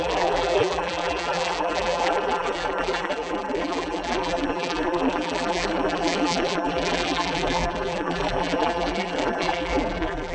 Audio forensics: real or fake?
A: fake